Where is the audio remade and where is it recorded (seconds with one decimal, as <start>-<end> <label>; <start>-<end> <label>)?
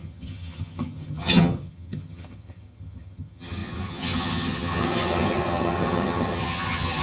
0.0-7.0 remade